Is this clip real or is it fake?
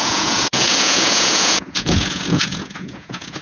fake